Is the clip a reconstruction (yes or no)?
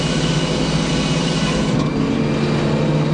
no